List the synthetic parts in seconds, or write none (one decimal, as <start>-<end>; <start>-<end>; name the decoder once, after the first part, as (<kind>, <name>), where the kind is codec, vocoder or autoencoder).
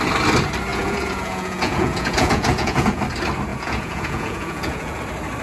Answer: 0.7-3.0 (vocoder, Vocos); 3.5-5.0